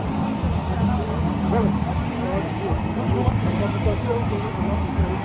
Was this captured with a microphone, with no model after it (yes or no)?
yes